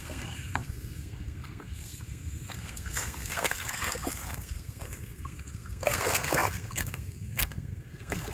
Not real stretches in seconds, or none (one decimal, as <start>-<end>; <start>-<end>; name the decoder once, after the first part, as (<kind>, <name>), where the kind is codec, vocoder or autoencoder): 0.0-8.3 (codec, SNAC)